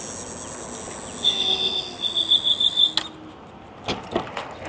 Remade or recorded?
recorded